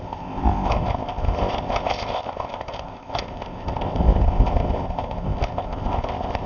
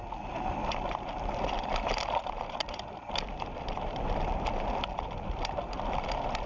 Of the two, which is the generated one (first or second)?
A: first